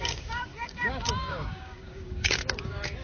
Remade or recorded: remade